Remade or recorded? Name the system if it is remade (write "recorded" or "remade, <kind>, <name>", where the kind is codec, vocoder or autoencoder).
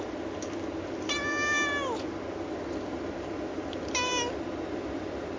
recorded